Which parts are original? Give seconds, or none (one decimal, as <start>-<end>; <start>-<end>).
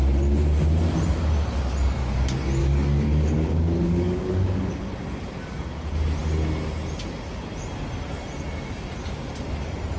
0.0-2.6; 4.7-10.0